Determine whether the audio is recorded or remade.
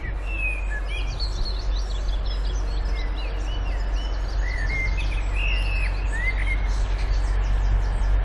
recorded